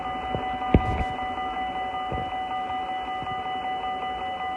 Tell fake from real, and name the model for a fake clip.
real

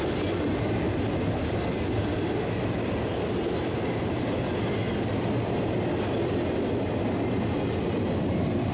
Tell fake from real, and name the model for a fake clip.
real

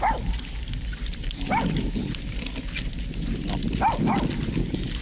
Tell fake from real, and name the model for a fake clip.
real